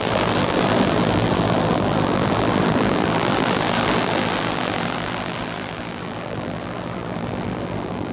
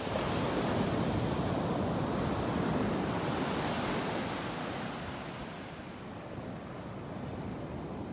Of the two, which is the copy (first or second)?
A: first